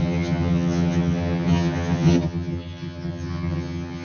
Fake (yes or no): yes